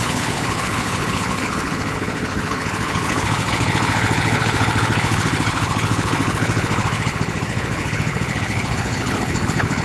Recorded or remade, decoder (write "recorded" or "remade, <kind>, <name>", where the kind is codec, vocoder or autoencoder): remade, codec, HILCodec